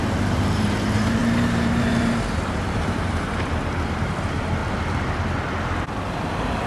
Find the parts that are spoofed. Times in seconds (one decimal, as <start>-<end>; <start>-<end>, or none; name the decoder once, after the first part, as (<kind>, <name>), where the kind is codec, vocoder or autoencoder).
0.0-4.6 (vocoder, BigVGAN v2); 6.3-6.7